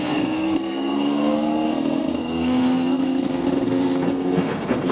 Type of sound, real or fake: fake